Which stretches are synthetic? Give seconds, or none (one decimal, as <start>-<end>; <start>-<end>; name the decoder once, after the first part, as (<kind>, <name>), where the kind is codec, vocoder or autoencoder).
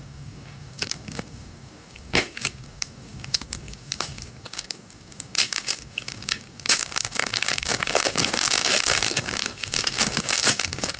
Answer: 0.0-11.0 (codec, DAC)